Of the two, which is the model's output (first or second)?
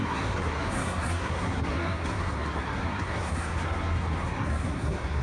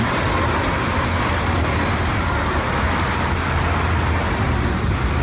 first